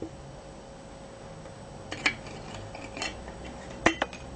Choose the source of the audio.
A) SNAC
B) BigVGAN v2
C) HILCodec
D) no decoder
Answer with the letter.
D